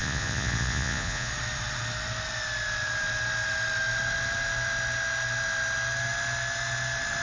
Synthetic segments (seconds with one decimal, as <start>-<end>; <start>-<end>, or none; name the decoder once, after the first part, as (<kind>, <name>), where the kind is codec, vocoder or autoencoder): 0.0-1.3 (vocoder, Vocos)